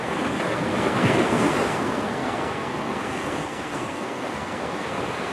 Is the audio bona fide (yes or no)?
no